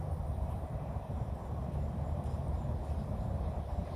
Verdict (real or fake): real